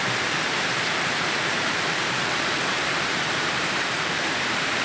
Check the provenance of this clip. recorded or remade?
remade